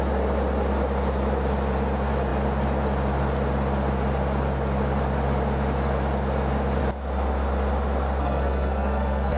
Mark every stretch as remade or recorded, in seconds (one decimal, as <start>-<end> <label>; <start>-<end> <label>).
0.0-8.2 recorded; 8.2-9.4 remade